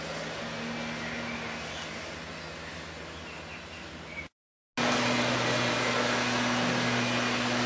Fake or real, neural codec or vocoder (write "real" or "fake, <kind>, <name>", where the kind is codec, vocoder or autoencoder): real